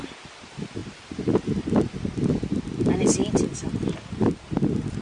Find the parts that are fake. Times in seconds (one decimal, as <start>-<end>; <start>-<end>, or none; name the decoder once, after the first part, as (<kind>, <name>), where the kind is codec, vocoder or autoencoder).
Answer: 3.2-4.1 (vocoder, BigVGAN v2)